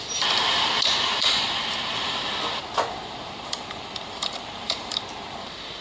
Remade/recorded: remade